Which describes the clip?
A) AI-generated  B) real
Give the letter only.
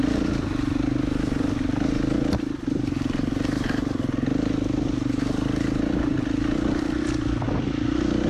B